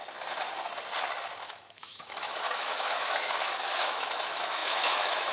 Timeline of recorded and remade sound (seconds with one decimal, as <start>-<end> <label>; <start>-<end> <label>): 0.0-1.2 recorded; 1.2-5.3 remade